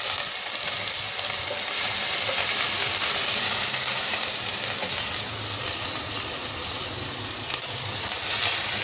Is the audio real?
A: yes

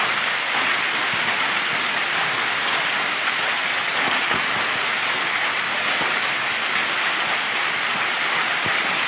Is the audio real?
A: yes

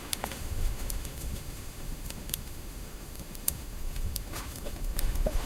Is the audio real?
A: no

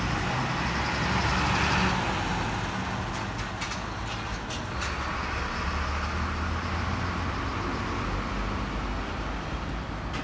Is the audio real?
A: yes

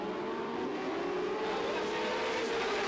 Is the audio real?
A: yes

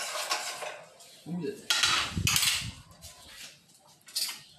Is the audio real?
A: yes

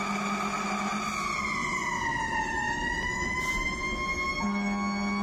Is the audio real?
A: yes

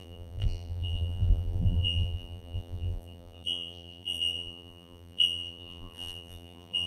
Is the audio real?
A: no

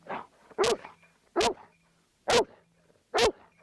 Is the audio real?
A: yes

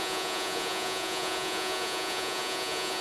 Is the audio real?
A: no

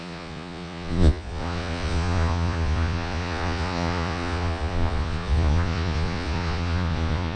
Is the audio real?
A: no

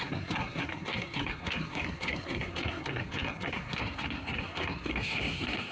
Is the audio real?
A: no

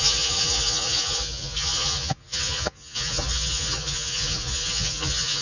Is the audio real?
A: no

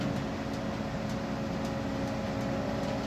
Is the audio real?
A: yes